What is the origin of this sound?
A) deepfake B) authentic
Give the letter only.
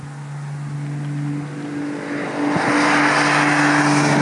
B